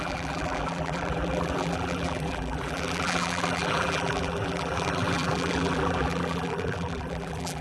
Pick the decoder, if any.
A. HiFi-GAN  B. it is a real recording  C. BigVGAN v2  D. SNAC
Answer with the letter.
C